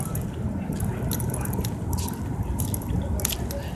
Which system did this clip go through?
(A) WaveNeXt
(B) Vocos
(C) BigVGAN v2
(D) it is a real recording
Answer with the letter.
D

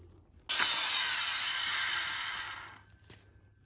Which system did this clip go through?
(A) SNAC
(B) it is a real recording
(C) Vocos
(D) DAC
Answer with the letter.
B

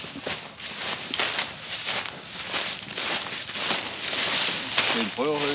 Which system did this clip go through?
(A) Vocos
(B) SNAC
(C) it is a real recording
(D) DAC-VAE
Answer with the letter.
C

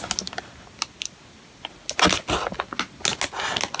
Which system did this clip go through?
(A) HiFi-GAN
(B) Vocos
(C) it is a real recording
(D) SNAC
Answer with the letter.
C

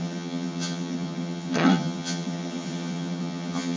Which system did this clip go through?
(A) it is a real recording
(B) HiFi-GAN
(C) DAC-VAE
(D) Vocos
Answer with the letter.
B